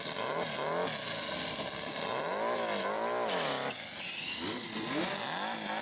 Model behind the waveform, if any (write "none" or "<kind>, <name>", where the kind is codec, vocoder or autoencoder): none